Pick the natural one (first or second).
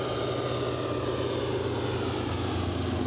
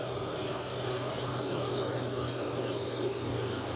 first